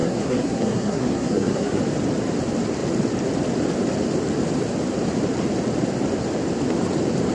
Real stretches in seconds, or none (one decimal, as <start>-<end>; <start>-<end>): 1.8-7.3